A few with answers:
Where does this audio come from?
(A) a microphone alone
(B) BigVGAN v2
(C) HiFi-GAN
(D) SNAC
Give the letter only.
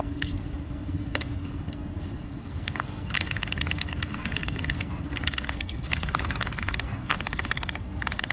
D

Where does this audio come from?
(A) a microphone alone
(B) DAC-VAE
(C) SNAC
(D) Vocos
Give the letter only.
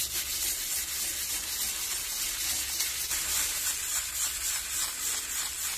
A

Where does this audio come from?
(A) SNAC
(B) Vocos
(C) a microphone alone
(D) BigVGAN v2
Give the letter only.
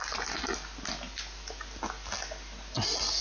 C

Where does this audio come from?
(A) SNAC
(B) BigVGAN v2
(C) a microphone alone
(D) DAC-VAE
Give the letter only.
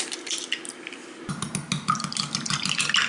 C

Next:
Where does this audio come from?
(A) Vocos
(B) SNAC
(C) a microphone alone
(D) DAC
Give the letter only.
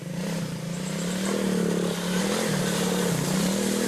C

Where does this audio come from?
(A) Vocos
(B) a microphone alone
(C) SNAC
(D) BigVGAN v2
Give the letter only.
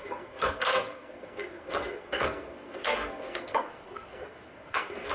C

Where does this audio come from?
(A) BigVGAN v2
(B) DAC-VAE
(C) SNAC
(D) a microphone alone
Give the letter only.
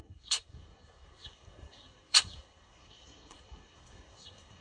C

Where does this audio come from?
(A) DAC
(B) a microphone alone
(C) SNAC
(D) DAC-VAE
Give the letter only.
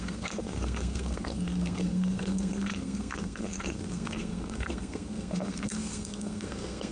C